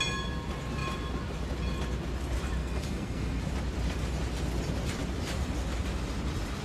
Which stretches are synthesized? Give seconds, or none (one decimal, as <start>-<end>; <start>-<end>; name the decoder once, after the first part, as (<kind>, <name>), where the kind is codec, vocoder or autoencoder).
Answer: 2.6-3.4 (codec, SNAC)